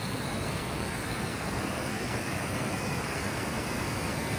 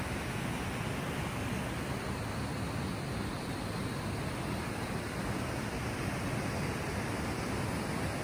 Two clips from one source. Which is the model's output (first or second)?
first